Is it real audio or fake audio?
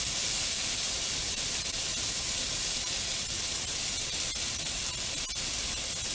real